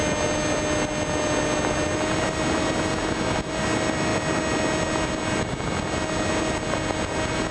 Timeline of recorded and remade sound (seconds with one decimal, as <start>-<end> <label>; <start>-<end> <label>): 0.0-7.5 recorded